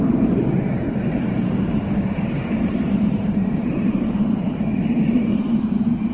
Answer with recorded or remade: remade